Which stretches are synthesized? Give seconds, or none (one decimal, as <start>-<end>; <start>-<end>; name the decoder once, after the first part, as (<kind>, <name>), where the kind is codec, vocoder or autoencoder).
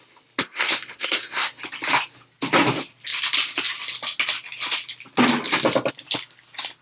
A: 0.4-1.5 (codec, SNAC)